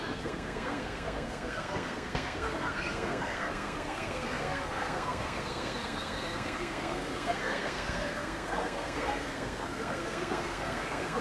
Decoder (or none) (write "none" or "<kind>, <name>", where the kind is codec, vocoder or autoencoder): codec, SNAC